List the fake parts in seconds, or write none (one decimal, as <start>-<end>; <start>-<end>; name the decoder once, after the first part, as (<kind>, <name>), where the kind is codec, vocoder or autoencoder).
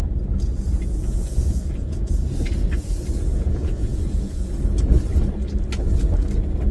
1.0-2.1 (vocoder, Vocos); 3.3-4.5